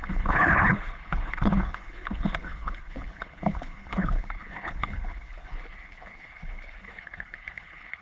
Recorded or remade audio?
remade